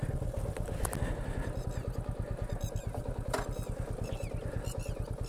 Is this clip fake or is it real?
real